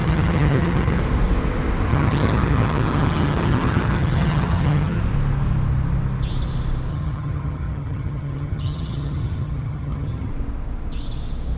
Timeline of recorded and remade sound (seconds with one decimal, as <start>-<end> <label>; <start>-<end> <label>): 0.0-1.0 remade; 1.0-1.9 recorded; 1.9-5.0 remade; 5.0-6.9 recorded; 6.9-10.3 remade; 10.3-11.6 recorded